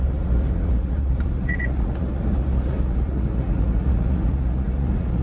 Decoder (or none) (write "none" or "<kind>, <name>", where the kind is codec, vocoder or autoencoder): vocoder, Vocos